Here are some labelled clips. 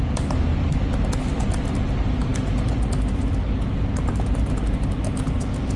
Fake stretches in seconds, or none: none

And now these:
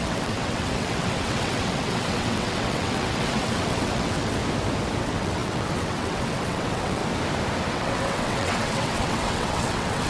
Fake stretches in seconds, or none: 0.0-4.4 (vocoder, WaveNeXt); 5.0-7.0; 7.7-10.1

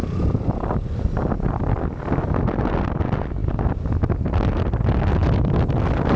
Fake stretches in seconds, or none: none

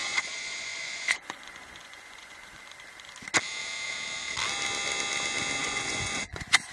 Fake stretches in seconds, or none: 0.0-2.6 (vocoder, Vocos); 5.6-6.7

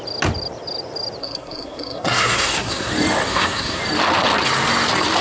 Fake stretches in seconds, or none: 1.2-2.9 (codec, SNAC); 3.3-3.8

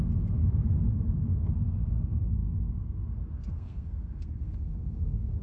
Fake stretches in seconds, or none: 0.0-0.4 (codec, SNAC); 0.9-5.4

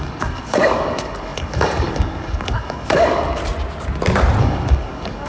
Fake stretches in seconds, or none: 0.0-3.4 (codec, DAC); 4.4-5.3

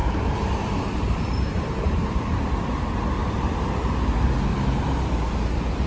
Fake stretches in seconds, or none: 0.0-2.2 (vocoder, BigVGAN v2); 3.2-4.0